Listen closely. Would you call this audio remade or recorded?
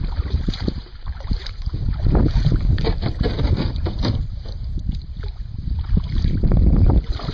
remade